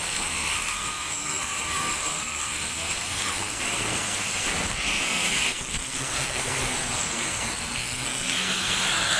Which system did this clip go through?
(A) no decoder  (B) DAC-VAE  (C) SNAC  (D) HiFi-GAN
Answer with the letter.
C